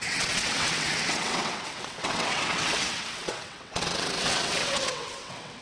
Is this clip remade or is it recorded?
remade